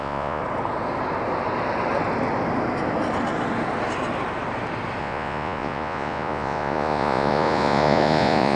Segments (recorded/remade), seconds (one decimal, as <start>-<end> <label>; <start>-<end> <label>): 0.0-0.4 remade; 0.4-5.0 recorded; 5.0-8.6 remade